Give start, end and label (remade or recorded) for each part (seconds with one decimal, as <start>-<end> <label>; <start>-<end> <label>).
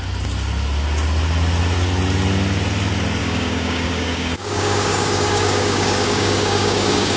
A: 0.0-3.2 recorded; 3.2-7.2 remade